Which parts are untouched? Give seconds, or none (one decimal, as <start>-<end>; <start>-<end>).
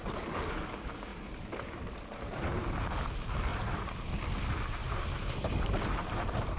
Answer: 0.0-1.1; 2.6-3.5; 4.1-4.8